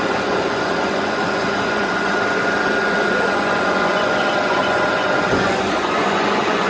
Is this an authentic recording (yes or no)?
no